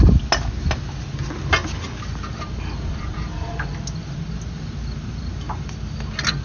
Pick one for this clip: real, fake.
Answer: real